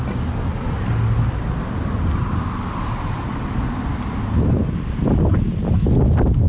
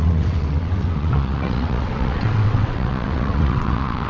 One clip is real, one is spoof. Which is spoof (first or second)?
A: second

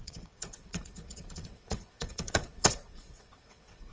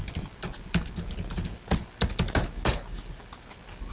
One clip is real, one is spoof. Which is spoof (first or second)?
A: first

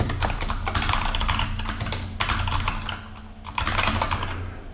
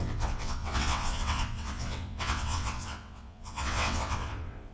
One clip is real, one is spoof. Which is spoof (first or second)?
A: second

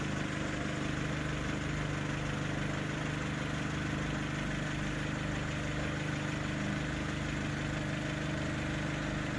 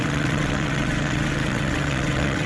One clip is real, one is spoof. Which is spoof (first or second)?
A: second